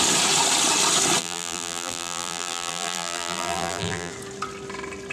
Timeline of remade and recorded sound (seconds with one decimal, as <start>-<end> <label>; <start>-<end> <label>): 0.0-1.2 recorded; 1.2-4.1 remade; 4.1-5.1 recorded